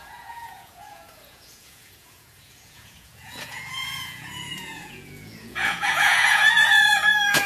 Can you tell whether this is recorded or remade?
remade